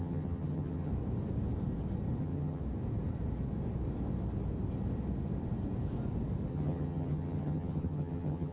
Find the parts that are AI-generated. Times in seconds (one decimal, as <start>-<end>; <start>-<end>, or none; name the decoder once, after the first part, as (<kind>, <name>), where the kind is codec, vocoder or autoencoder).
0.0-0.9 (vocoder, HiFi-GAN); 2.2-2.6; 6.5-8.5